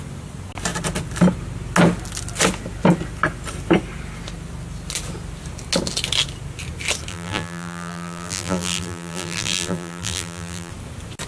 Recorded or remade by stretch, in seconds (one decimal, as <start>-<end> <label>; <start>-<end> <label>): 0.0-7.1 recorded; 7.1-10.7 remade; 10.7-11.3 recorded